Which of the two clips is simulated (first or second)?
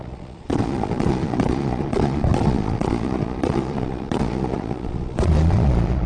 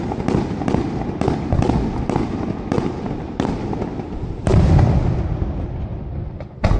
first